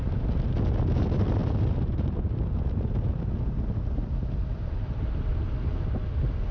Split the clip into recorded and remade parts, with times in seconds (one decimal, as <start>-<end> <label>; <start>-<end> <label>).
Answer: 0.0-1.4 recorded; 1.4-5.3 remade; 5.3-6.5 recorded

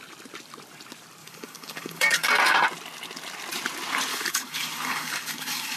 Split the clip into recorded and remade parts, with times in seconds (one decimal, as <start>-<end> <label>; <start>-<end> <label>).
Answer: 0.0-1.2 recorded; 1.2-2.3 remade; 2.3-4.1 recorded; 4.1-5.8 remade

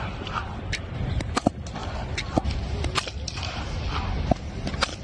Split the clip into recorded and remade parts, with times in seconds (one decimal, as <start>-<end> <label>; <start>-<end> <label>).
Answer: 0.0-0.4 recorded; 0.4-1.4 remade; 1.4-5.0 recorded

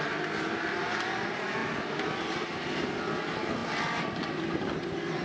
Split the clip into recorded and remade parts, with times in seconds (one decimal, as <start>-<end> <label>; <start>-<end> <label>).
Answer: 0.0-5.2 recorded

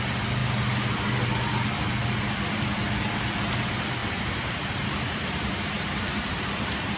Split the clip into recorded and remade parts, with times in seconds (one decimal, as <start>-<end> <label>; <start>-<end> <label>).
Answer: 0.0-4.0 recorded; 4.0-7.0 remade

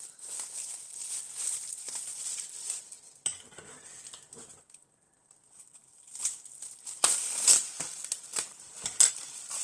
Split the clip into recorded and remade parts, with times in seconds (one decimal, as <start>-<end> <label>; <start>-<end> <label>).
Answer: 0.0-2.1 recorded; 2.1-3.4 remade; 3.4-9.6 recorded

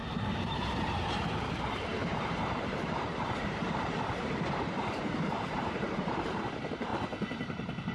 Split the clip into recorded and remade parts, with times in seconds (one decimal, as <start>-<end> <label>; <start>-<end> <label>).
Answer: 0.0-1.2 remade; 1.2-1.9 recorded; 1.9-6.2 remade; 6.2-7.9 recorded

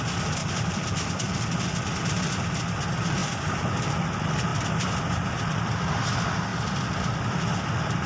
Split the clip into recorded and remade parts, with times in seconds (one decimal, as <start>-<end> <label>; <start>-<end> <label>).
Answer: 0.0-0.4 recorded; 0.4-1.1 remade; 1.1-8.1 recorded